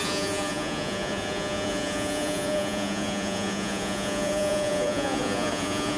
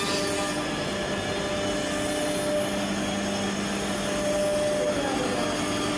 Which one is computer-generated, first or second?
first